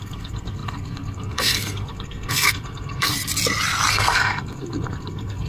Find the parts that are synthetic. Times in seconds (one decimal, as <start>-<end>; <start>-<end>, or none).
0.0-3.1; 3.9-5.5